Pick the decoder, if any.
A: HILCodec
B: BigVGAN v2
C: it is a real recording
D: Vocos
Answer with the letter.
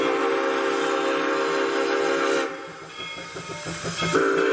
C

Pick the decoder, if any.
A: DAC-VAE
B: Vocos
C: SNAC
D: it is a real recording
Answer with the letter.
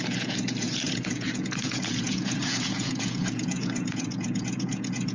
B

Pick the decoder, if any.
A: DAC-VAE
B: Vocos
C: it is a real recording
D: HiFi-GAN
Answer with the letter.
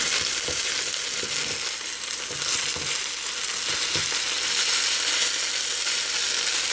C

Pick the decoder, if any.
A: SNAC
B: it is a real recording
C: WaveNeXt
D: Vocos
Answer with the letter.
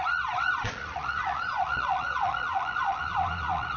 D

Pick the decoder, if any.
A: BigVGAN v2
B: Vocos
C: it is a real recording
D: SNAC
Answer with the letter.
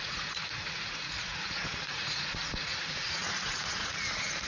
B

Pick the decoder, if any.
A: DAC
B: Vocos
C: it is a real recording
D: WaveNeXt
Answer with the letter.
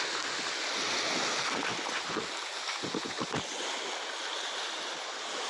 C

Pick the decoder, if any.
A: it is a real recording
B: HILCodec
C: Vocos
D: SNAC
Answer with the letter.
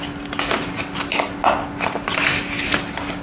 A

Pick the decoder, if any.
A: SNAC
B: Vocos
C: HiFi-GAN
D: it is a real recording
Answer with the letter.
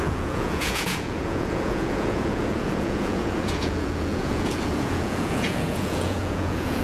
B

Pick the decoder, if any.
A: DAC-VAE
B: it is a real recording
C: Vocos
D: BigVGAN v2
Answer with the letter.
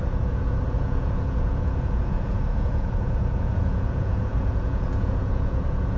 C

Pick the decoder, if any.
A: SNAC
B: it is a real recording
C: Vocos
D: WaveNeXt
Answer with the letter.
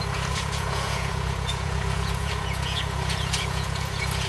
C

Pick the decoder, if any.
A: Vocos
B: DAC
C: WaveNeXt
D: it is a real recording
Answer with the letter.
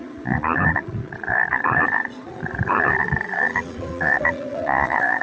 A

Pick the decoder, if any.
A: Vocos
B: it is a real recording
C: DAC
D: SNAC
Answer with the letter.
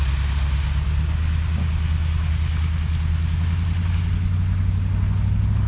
B